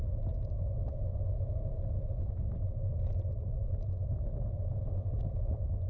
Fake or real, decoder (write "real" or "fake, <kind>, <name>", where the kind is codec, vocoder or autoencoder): real